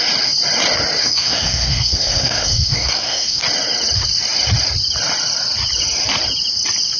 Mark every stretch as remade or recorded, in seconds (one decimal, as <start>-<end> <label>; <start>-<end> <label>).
0.0-1.0 recorded; 1.0-3.4 remade; 3.4-7.0 recorded